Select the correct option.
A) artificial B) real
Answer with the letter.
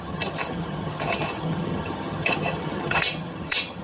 A